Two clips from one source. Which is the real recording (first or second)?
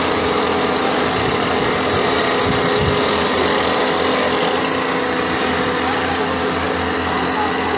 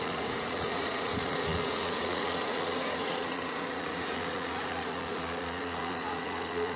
first